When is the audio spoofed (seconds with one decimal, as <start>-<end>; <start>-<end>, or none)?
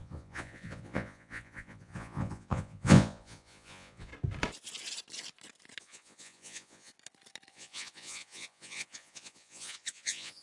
0.0-4.1; 5.8-6.9; 7.5-10.4